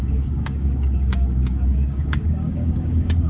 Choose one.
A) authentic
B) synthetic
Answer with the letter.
B